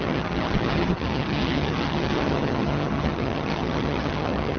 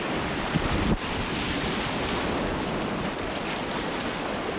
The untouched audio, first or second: second